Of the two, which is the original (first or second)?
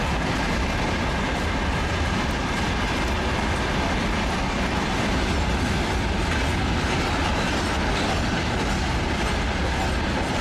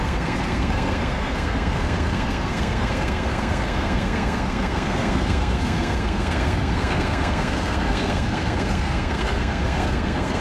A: first